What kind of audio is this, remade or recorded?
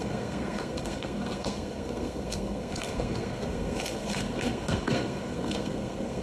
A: remade